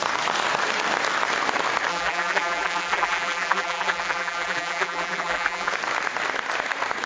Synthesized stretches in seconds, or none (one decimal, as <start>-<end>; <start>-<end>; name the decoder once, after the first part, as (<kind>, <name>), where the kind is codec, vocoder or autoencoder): 1.9-5.7 (vocoder, BigVGAN v2)